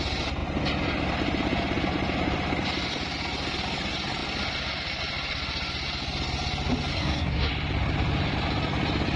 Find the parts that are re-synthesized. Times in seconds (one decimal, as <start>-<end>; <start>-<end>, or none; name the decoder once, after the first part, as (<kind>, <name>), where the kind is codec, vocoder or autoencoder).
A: 6.9-7.5 (codec, SNAC)